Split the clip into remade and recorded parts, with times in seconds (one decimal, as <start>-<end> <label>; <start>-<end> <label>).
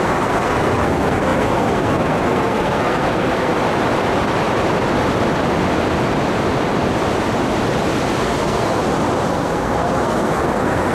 0.0-3.5 remade; 3.5-8.2 recorded; 8.2-8.8 remade; 8.8-9.3 recorded; 9.3-10.9 remade